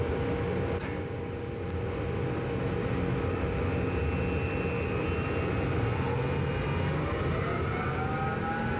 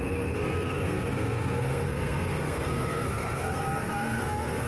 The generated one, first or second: second